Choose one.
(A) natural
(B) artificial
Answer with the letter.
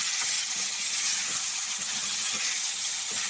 B